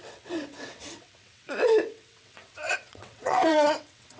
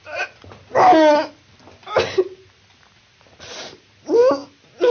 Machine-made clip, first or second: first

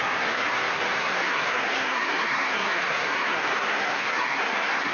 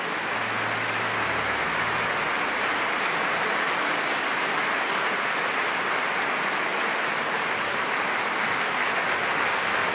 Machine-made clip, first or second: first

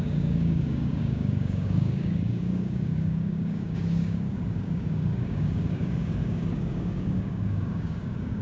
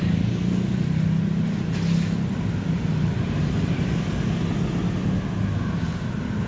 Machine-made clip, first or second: first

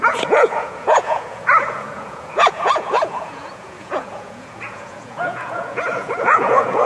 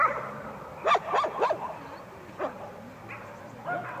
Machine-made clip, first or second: first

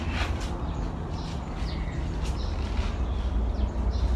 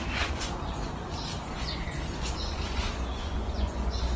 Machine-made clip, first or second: second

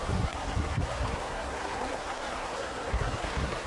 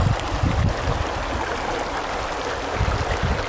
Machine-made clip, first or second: first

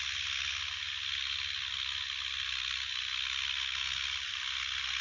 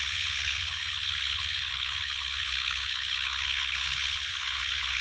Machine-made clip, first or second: second